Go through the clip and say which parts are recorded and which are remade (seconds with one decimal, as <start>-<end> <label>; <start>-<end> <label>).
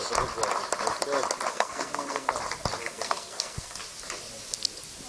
0.0-1.5 recorded; 1.5-2.3 remade; 2.3-2.8 recorded; 2.8-3.8 remade; 3.8-5.1 recorded